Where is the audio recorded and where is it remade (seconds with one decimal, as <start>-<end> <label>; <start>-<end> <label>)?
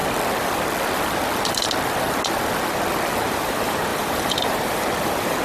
0.0-3.2 recorded; 3.2-5.4 remade